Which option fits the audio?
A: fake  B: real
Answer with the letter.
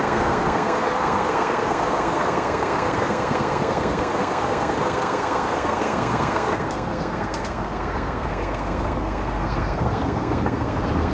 A